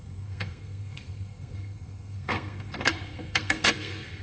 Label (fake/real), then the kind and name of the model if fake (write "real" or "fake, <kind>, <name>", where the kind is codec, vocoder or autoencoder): fake, codec, SNAC